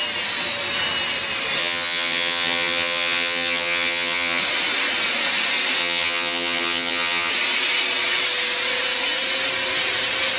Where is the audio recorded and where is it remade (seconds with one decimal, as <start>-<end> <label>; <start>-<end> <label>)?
0.0-1.6 recorded; 1.6-4.4 remade; 4.4-5.8 recorded; 5.8-7.3 remade; 7.3-10.4 recorded